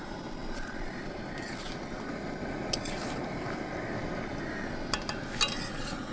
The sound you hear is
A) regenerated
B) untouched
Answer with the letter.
B